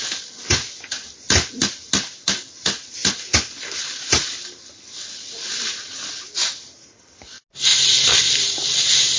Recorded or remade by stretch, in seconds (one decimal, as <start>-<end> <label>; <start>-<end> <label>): 0.0-9.2 recorded